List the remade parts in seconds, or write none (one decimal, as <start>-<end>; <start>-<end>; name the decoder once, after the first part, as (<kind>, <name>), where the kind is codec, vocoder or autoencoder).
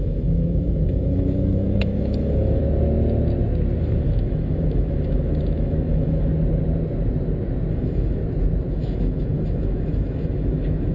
0.0-2.6 (autoencoder, DAC-VAE); 3.8-6.3; 7.7-8.2; 8.7-10.9